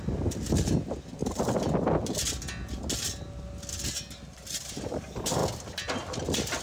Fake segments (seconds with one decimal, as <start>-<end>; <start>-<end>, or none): none